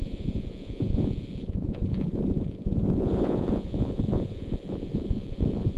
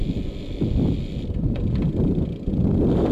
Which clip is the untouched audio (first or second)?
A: second